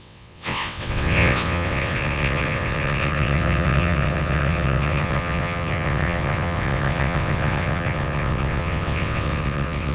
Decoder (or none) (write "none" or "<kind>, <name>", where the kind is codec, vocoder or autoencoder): vocoder, WaveNeXt